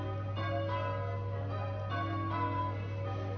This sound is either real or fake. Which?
real